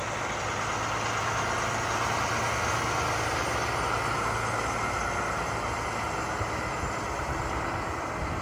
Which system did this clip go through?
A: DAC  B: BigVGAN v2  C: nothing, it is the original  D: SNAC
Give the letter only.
C